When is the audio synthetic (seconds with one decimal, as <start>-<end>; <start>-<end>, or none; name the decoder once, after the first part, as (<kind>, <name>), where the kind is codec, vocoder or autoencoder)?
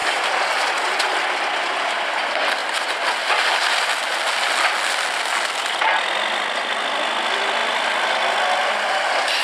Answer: 0.0-2.1 (vocoder, BigVGAN v2)